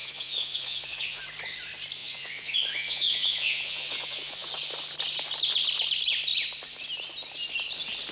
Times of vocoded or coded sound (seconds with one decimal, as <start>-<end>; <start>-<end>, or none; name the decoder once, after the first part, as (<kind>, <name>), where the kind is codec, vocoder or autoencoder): 0.0-1.2 (vocoder, Vocos); 2.0-4.5